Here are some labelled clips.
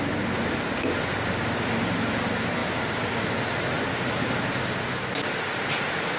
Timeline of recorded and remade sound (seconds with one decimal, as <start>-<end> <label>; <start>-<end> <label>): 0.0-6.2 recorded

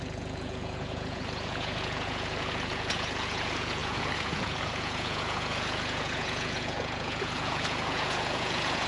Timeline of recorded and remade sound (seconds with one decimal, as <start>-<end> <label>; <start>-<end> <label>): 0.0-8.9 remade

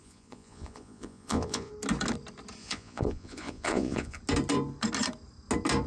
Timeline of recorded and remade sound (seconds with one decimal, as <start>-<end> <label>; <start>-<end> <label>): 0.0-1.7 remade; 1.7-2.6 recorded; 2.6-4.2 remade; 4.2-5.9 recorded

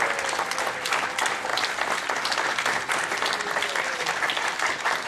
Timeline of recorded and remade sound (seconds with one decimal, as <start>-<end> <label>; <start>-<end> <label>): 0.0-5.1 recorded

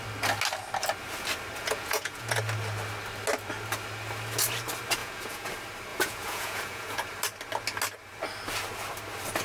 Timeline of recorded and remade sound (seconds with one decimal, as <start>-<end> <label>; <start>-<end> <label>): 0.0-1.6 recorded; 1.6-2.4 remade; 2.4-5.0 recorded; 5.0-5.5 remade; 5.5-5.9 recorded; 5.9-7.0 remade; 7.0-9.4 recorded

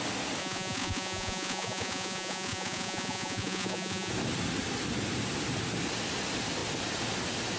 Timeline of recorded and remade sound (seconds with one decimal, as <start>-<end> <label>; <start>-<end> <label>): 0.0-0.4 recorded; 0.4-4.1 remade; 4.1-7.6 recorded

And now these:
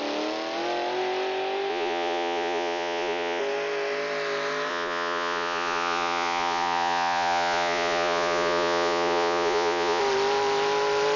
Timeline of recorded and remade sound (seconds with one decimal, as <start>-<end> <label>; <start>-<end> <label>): 0.0-1.7 recorded; 1.7-3.4 remade; 3.4-4.7 recorded; 4.7-10.0 remade; 10.0-11.2 recorded